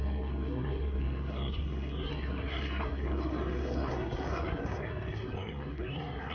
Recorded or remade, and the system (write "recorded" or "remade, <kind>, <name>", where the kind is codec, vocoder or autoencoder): remade, codec, SNAC